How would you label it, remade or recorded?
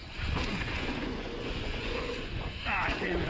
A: remade